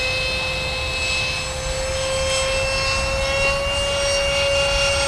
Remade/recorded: recorded